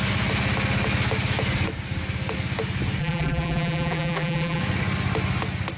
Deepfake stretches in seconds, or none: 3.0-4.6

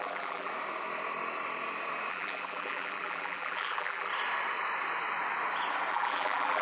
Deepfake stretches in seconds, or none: 0.0-0.5; 2.1-4.1; 5.9-6.6

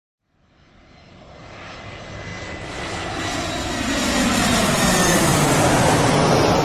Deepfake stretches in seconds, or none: none

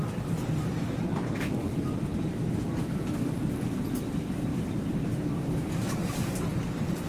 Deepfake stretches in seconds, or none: 4.5-6.2

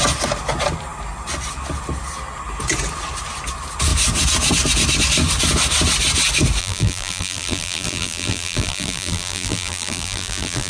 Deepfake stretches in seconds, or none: 6.6-10.7